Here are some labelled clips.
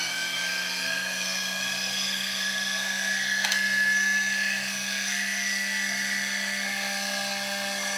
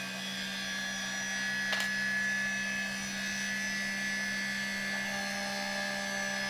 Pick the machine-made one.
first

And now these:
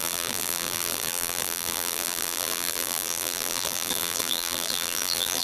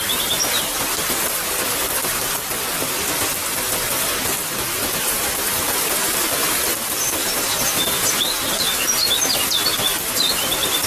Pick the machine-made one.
first